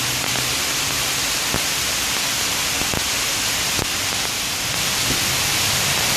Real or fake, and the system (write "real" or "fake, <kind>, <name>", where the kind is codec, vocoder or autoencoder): real